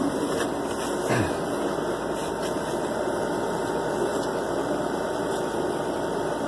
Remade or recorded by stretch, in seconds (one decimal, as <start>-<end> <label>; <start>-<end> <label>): 0.0-2.2 recorded; 2.2-6.1 remade; 6.1-6.5 recorded